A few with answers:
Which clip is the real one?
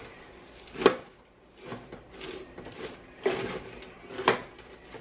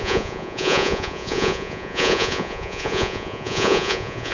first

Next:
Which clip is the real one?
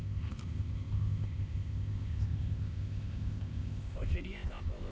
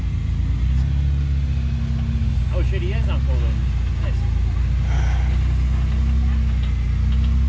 second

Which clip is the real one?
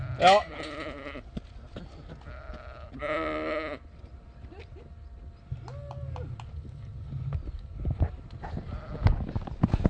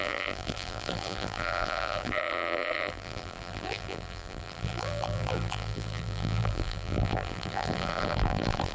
first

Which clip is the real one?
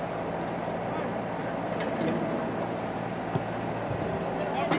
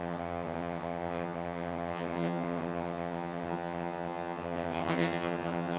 first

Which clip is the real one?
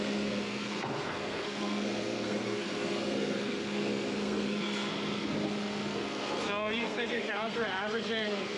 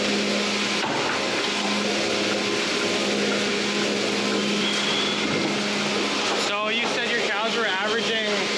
second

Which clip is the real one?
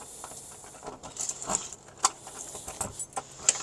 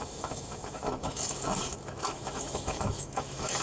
first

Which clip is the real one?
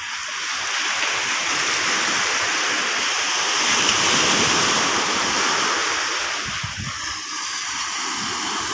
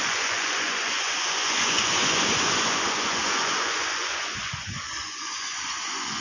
first